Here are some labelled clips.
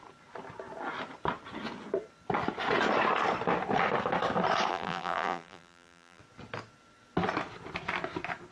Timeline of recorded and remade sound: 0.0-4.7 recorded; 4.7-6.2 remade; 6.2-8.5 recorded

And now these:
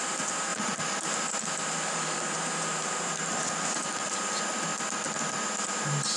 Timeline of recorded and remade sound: 0.0-4.7 remade; 4.7-5.4 recorded; 5.4-6.2 remade

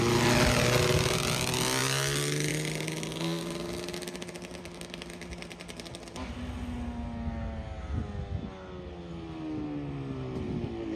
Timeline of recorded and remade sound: 0.0-11.0 recorded

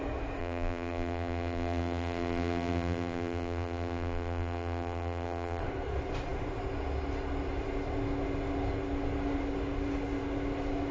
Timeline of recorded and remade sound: 0.0-0.4 recorded; 0.4-5.6 remade; 5.6-10.9 recorded

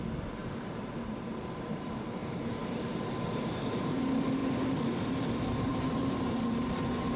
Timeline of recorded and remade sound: 0.0-0.4 recorded; 0.4-4.0 remade; 4.0-5.7 recorded; 5.7-7.2 remade

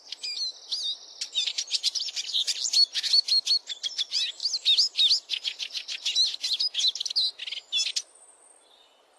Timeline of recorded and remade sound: 0.0-1.3 recorded; 1.3-2.6 remade; 2.6-9.2 recorded

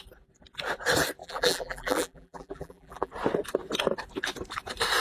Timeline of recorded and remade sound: 0.0-1.2 recorded; 1.2-3.1 remade; 3.1-5.0 recorded